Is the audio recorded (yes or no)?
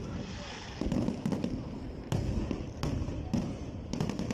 yes